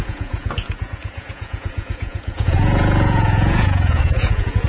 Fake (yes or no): yes